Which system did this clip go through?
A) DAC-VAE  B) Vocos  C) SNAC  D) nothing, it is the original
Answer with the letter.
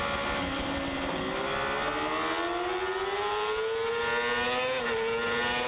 D